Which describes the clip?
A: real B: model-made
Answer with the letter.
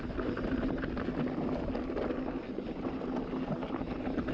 A